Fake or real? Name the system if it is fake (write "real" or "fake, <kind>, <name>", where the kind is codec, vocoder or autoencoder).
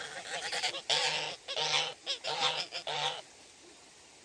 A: real